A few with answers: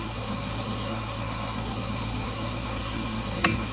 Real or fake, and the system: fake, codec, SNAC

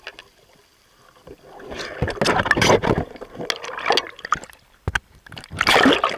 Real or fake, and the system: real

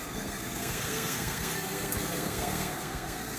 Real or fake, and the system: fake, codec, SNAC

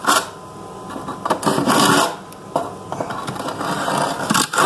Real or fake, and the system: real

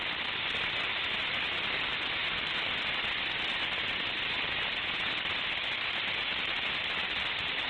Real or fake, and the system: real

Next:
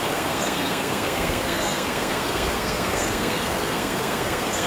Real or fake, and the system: fake, codec, SNAC